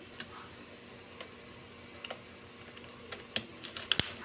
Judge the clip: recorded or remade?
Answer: recorded